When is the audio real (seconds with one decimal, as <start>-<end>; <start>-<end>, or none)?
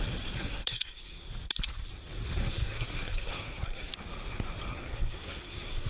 0.0-0.4; 1.3-2.4; 3.9-4.7